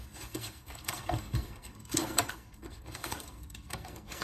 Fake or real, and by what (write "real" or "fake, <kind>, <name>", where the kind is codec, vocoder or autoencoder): fake, codec, SNAC